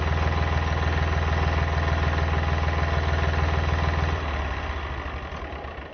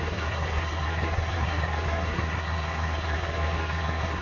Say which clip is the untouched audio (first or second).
first